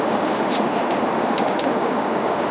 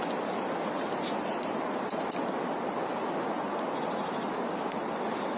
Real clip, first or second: second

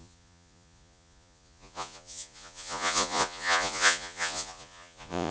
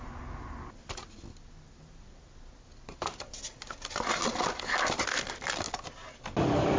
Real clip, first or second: second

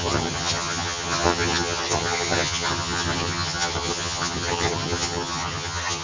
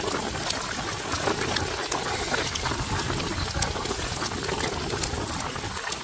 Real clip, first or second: second